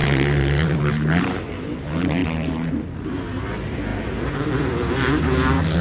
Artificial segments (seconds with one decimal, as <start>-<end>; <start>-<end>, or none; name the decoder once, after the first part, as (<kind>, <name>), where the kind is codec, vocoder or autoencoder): 0.0-5.8 (vocoder, BigVGAN v2)

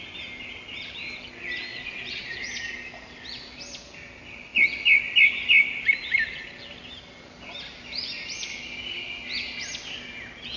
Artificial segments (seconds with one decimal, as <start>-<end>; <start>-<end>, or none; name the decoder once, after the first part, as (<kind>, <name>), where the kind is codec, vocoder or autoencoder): 1.7-2.6 (vocoder, Vocos)

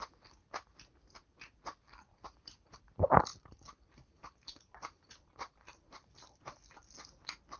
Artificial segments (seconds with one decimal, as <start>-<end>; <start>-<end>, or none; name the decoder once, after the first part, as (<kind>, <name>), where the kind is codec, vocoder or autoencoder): 2.1-2.8 (vocoder, BigVGAN v2); 3.3-6.4

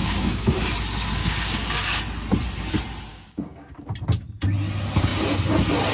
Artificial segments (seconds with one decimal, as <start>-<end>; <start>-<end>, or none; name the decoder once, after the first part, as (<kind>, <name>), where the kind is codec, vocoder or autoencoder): 0.0-0.5 (codec, DAC); 1.2-2.0; 3.1-3.7

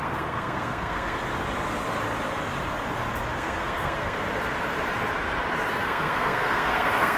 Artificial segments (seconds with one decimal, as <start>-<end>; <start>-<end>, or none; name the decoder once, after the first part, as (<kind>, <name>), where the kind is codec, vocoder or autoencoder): 0.0-1.3 (codec, SNAC); 3.3-4.3; 5.7-7.2